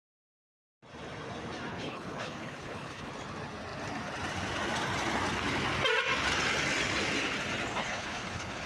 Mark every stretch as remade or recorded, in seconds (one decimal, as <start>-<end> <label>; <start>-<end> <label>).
0.0-1.7 recorded; 1.7-3.1 remade; 3.1-7.8 recorded; 7.8-8.7 remade